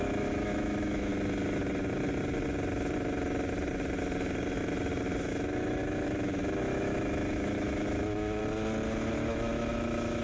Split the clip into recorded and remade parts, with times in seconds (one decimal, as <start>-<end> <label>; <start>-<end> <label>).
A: 0.0-1.1 remade; 1.1-5.2 recorded; 5.2-8.4 remade; 8.4-9.1 recorded; 9.1-10.2 remade